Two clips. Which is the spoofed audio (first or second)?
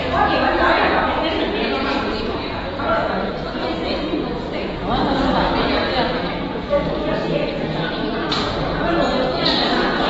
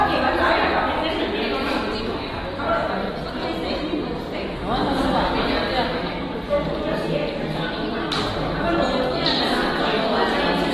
first